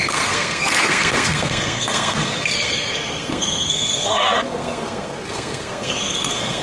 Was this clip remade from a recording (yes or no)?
yes